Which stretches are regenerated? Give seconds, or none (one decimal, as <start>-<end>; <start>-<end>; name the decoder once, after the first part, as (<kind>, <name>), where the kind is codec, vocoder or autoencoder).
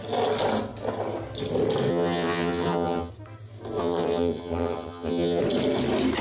1.9-3.1 (vocoder, HiFi-GAN); 3.8-5.4